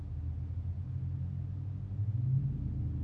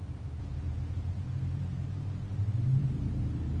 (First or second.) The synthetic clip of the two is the second